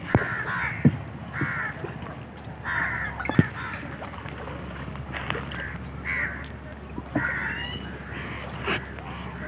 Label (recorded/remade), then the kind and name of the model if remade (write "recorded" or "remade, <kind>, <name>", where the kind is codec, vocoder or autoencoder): remade, vocoder, BigVGAN v2